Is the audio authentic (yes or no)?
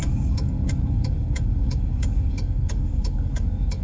no